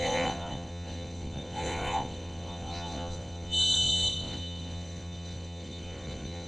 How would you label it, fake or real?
fake